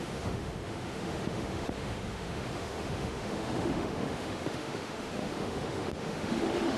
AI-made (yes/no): yes